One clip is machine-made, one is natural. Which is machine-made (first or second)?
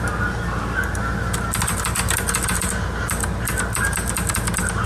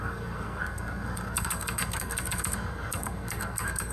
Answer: second